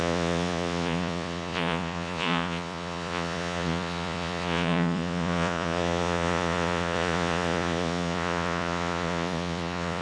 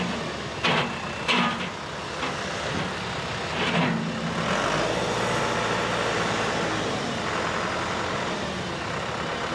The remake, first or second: first